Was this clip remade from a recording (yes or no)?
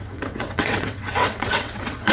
yes